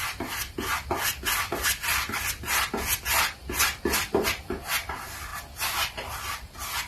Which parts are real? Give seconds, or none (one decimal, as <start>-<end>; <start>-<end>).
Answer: 0.0-6.9